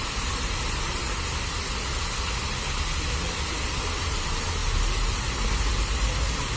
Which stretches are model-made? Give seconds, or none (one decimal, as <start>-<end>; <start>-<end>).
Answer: 0.0-1.0; 4.1-4.6; 5.7-6.6